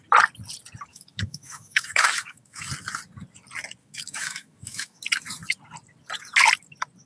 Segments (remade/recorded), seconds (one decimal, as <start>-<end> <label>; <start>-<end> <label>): 0.0-0.9 recorded; 0.9-2.7 remade; 2.7-3.8 recorded; 3.8-5.0 remade; 5.0-7.1 recorded